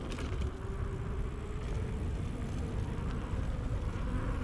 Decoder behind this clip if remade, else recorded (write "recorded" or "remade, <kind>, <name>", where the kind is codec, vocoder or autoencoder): recorded